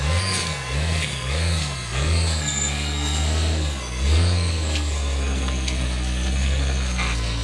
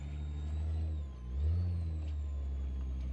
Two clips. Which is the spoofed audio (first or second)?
first